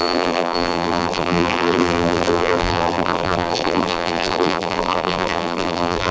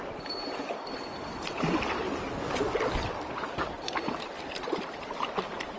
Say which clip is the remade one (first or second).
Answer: first